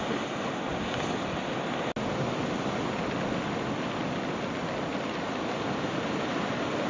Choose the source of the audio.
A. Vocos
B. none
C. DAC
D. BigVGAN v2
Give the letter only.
B